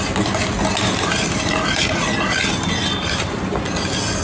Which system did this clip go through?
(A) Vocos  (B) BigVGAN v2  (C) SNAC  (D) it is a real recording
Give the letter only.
D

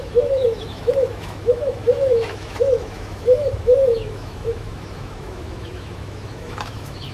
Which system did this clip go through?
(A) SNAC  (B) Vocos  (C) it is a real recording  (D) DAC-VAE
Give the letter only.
D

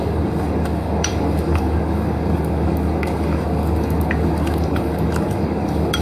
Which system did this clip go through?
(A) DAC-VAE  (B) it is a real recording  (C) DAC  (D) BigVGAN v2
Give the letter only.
C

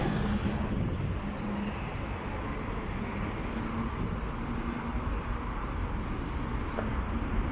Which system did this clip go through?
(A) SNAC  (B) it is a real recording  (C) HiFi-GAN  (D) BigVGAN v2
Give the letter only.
B